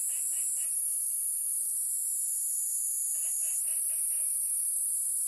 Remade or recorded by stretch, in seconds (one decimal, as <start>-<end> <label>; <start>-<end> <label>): 0.0-5.3 recorded